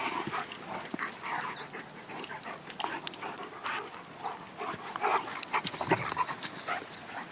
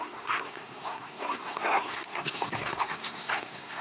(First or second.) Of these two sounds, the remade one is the second